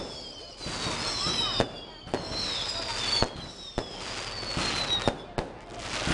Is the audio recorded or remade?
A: recorded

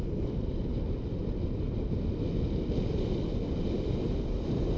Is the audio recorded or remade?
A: recorded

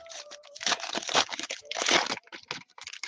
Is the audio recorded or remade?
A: remade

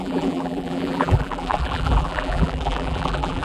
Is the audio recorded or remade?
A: remade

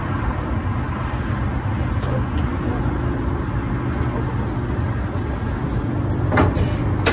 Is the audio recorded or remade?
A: recorded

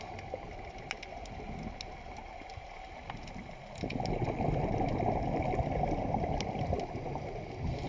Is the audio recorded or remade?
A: recorded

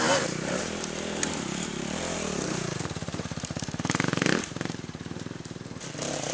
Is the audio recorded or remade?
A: remade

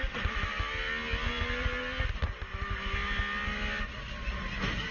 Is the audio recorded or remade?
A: recorded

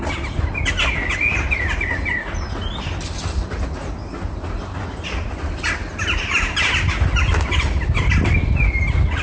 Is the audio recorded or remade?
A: recorded